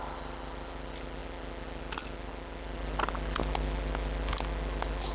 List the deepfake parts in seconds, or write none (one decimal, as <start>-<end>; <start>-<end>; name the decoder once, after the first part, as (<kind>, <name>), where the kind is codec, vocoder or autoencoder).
none